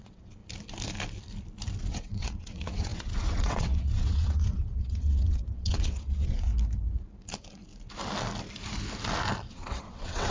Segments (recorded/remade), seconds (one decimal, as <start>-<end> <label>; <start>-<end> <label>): 0.0-0.4 remade; 0.4-1.8 recorded; 1.8-6.5 remade; 6.5-9.5 recorded; 9.5-10.3 remade